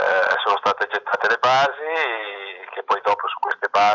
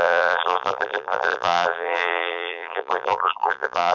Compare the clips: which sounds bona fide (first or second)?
first